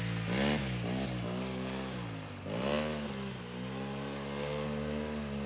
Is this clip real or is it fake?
real